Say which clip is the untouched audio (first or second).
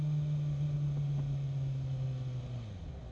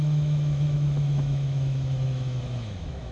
first